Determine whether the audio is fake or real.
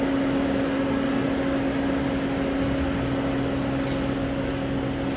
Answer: real